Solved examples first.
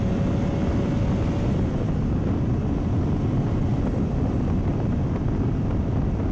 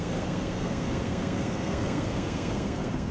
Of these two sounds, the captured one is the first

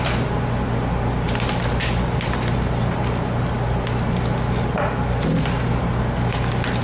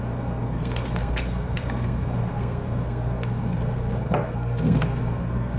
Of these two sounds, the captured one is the first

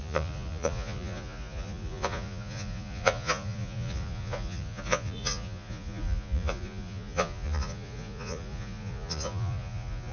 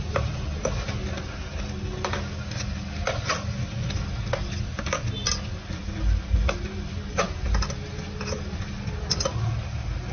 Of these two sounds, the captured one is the second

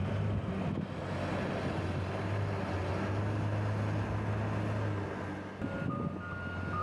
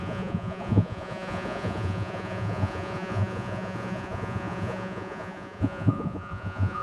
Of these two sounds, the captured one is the first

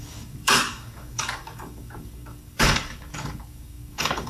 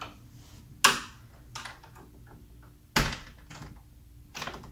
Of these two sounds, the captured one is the second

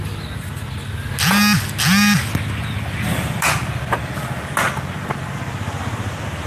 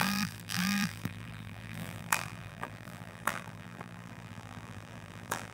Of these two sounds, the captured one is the first